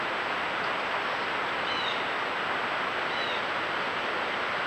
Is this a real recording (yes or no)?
yes